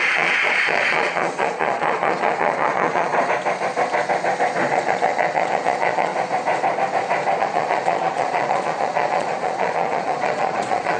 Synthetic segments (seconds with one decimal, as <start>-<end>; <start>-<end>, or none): 0.0-3.1; 4.7-6.1; 7.4-11.0